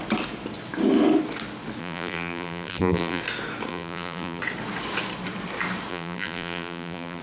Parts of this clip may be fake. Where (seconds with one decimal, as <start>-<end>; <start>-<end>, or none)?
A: 1.8-3.2; 3.7-4.4; 5.9-7.2